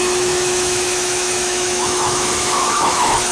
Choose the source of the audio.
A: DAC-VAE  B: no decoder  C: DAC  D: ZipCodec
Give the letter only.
A